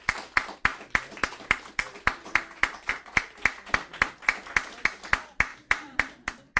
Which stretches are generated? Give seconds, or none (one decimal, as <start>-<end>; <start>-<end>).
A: 0.7-2.9; 5.5-6.6